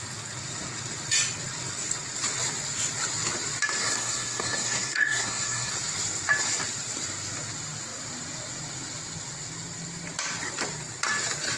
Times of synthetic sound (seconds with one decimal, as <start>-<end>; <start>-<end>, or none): 3.8-5.7

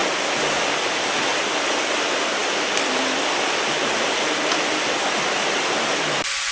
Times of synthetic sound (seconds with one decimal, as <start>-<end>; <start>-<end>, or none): none

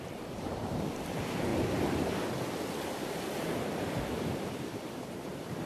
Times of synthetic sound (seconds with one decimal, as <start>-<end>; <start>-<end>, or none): 0.0-1.5; 3.4-5.7

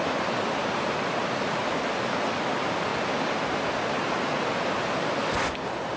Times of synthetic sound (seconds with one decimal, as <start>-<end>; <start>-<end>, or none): 1.2-1.8

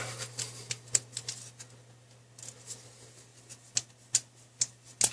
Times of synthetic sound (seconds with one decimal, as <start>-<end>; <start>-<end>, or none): none

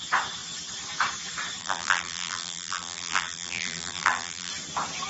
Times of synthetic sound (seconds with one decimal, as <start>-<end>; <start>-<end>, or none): 1.6-4.5

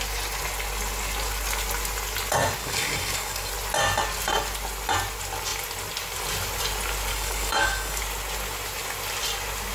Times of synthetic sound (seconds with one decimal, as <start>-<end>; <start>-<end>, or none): 2.6-3.5; 7.1-8.0

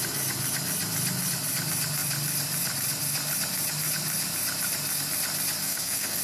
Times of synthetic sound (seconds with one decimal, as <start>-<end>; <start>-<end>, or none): 5.6-6.2